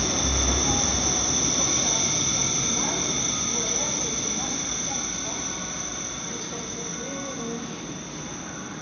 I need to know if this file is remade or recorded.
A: recorded